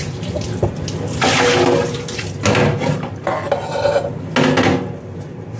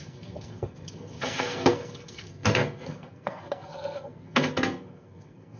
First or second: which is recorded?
first